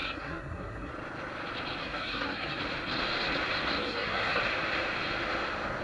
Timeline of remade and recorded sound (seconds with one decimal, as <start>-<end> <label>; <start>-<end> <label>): 0.0-0.9 remade; 0.9-1.8 recorded; 1.8-2.6 remade; 2.6-3.8 recorded; 3.8-4.4 remade; 4.4-5.8 recorded